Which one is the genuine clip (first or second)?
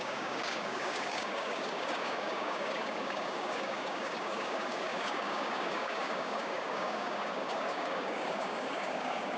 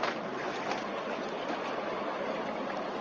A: second